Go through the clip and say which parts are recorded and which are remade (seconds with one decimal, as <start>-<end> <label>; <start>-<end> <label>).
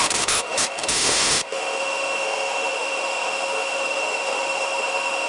0.0-5.3 remade